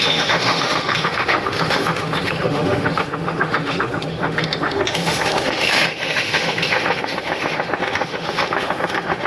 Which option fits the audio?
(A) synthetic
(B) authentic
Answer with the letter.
A